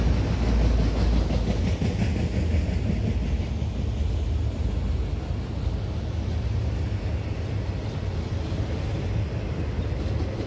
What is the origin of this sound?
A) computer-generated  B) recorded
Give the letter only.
B